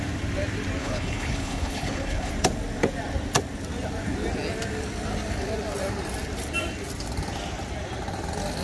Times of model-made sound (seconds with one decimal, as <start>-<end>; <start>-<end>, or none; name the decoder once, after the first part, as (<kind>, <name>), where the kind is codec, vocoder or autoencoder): 0.8-2.3 (codec, HILCodec)